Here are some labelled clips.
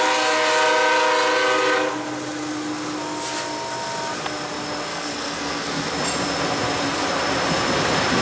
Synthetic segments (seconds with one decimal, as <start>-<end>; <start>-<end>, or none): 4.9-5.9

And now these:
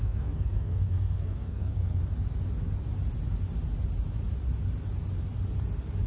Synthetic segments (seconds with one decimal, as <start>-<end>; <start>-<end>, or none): 0.0-2.0

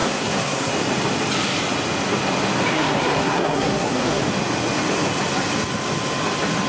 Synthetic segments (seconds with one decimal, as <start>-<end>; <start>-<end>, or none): 0.0-0.7; 2.7-4.2

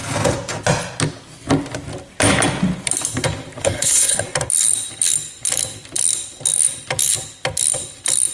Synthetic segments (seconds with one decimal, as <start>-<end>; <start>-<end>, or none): 3.6-4.2